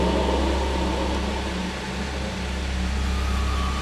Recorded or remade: recorded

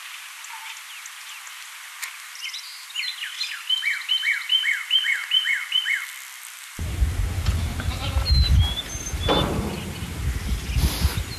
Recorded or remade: recorded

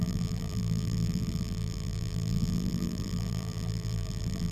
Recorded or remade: remade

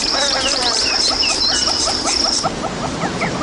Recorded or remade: remade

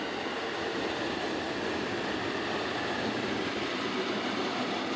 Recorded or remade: remade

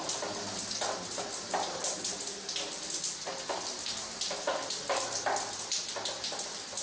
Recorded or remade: recorded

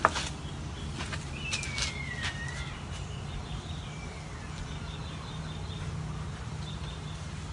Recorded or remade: recorded